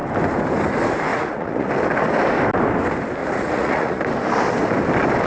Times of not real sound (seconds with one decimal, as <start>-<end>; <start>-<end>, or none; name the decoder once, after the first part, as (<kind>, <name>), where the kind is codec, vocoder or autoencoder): 1.1-1.7 (vocoder, Vocos); 3.2-4.0